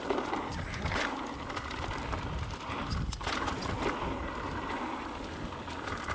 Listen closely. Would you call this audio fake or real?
real